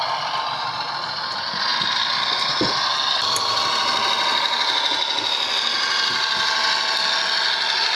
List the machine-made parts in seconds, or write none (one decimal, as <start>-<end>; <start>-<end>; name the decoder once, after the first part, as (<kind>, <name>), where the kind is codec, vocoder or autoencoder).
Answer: none